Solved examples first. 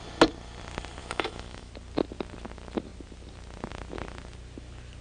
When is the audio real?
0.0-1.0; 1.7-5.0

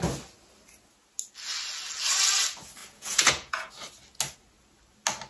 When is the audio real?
0.0-2.8; 3.7-5.3